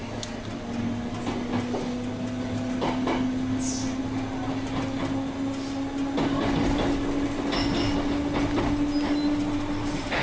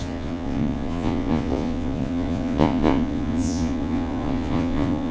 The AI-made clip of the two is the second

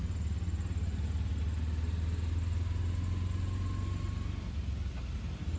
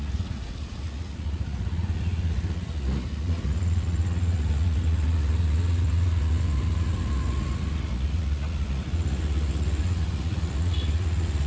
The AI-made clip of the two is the second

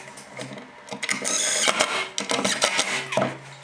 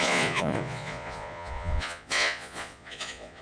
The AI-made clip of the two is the second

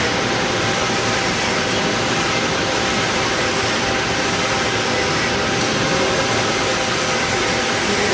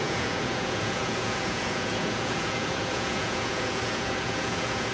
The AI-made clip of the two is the second